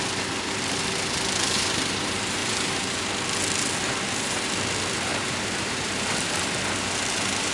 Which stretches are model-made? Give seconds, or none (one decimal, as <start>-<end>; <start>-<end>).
2.4-3.1; 5.1-6.6